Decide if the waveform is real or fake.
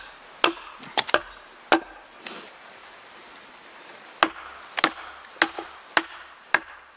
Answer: real